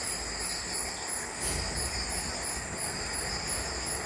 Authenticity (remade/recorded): recorded